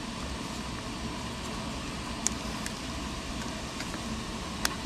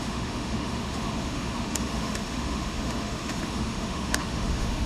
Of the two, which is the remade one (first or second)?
second